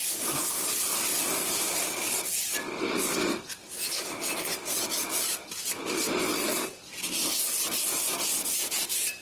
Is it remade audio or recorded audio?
recorded